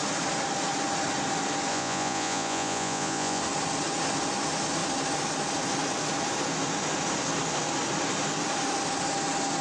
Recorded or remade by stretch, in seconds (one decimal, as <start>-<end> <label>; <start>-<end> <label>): 0.0-1.7 recorded; 1.7-3.4 remade; 3.4-9.6 recorded